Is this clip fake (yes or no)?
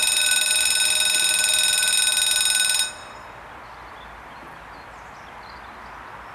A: no